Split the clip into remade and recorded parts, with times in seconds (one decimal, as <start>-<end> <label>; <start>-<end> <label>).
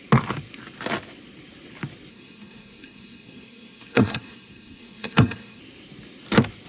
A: 0.0-2.1 recorded; 2.1-5.6 remade; 5.6-6.7 recorded